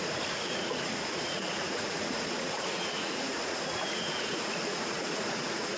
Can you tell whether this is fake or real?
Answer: fake